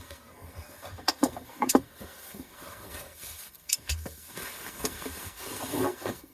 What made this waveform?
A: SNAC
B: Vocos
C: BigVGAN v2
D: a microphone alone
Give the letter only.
A